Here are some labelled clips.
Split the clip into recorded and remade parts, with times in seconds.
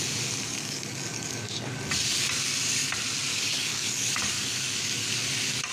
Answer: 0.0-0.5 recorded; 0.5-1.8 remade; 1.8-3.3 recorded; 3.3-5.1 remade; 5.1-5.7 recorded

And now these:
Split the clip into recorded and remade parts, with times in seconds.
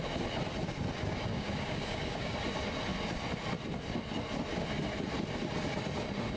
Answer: 0.0-1.3 recorded; 1.3-2.3 remade; 2.3-6.4 recorded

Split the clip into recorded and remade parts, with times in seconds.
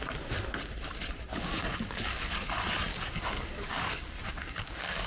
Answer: 0.0-1.3 recorded; 1.3-2.3 remade; 2.3-2.9 recorded; 2.9-5.1 remade